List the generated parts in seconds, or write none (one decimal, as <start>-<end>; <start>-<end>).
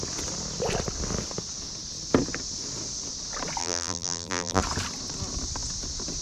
3.6-4.6